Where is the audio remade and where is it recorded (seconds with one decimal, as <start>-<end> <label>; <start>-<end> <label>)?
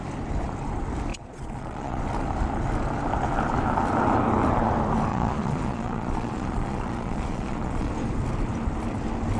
0.0-1.1 recorded; 1.1-2.0 remade; 2.0-5.1 recorded; 5.1-7.9 remade; 7.9-9.4 recorded